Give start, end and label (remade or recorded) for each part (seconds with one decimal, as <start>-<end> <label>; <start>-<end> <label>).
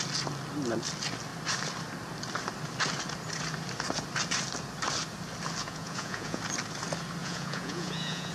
0.0-5.6 recorded; 5.6-6.4 remade; 6.4-7.2 recorded; 7.2-8.3 remade